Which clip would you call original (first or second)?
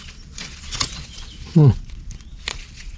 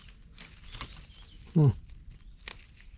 second